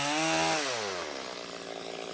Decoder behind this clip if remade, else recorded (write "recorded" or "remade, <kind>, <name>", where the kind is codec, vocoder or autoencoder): recorded